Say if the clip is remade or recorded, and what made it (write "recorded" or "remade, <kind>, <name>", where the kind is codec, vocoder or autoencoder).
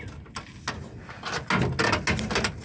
recorded